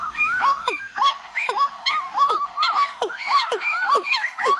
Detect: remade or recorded remade